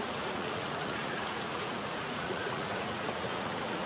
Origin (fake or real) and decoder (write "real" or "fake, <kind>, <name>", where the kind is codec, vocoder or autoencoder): fake, vocoder, Vocos